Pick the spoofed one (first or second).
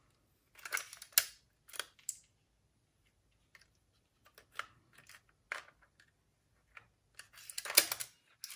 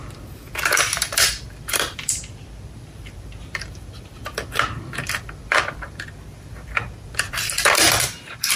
second